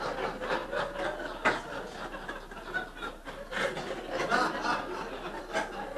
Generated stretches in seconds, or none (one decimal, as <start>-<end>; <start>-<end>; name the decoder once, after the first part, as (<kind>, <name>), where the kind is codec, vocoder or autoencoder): none